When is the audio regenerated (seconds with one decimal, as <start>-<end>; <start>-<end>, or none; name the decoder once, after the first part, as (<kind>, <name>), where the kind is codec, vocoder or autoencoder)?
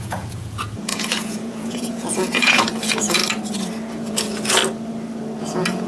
0.0-3.2 (vocoder, Vocos); 3.9-4.6; 5.4-5.9